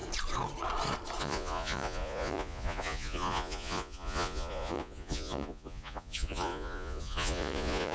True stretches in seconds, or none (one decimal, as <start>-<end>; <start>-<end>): 0.0-1.2